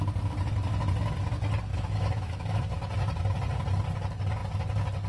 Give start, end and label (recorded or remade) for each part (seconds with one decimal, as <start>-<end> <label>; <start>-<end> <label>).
0.0-1.7 recorded; 1.7-2.6 remade; 2.6-5.1 recorded